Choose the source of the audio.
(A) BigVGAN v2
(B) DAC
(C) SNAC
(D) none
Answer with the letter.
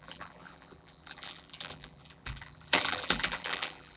A